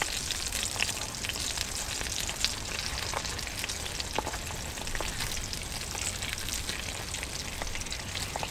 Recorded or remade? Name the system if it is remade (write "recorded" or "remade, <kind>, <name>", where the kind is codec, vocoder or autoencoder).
recorded